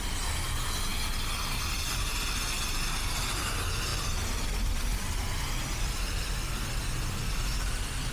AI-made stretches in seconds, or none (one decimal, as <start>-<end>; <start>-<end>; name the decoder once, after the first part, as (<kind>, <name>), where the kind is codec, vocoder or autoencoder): 3.9-6.3 (vocoder, BigVGAN v2)